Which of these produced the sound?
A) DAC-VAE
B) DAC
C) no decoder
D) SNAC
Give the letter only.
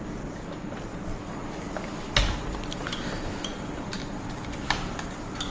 C